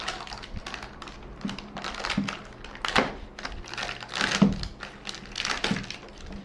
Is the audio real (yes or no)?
yes